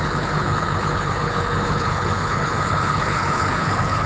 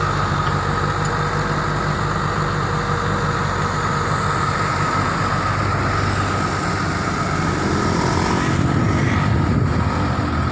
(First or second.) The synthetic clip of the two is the first